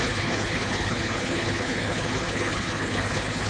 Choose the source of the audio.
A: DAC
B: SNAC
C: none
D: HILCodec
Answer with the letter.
D